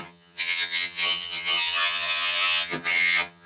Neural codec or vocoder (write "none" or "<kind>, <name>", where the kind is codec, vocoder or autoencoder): vocoder, HiFi-GAN